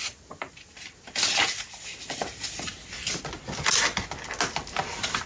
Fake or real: real